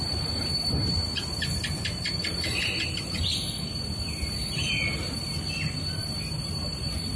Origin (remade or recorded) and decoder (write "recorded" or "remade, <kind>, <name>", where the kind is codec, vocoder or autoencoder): recorded